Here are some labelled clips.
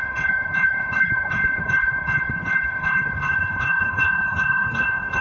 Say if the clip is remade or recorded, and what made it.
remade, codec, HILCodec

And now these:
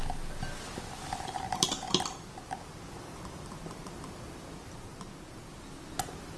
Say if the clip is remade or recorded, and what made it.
recorded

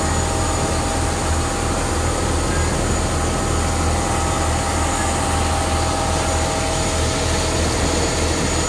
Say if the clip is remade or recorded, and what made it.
recorded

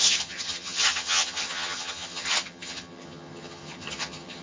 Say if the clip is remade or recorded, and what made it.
remade, vocoder, HiFi-GAN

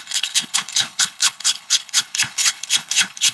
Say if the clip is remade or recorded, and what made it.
remade, codec, HILCodec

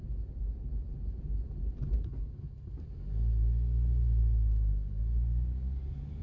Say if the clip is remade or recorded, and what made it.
recorded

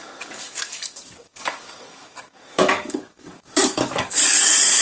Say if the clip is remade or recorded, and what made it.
remade, codec, DAC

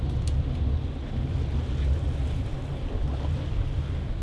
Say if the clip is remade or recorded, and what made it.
recorded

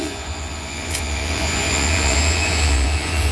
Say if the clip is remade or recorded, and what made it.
remade, vocoder, Vocos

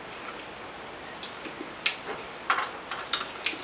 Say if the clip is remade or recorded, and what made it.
recorded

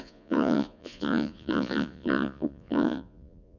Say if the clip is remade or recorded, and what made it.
remade, vocoder, Vocos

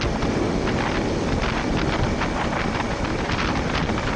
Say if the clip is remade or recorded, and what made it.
recorded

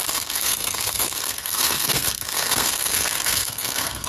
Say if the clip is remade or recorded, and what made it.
remade, codec, SNAC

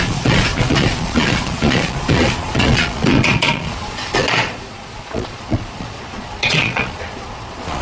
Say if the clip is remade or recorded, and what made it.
remade, vocoder, Vocos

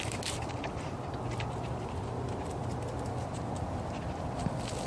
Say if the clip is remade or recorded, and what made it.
recorded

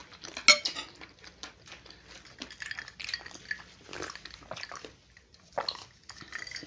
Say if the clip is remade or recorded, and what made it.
recorded